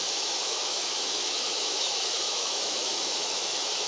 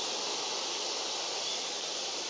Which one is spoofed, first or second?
first